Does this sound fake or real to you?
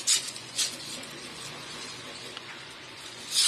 fake